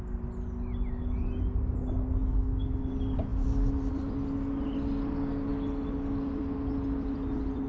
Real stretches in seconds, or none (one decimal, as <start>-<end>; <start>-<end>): 0.0-2.2; 2.7-7.7